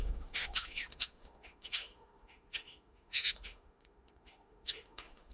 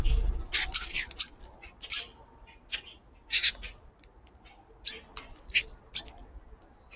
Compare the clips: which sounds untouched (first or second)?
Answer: second